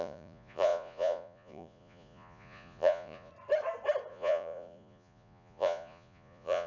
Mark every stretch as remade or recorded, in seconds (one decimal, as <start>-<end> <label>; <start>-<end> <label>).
0.0-3.3 remade; 3.3-4.1 recorded; 4.1-6.7 remade